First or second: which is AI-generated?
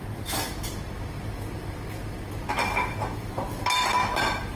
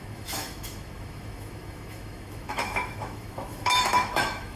second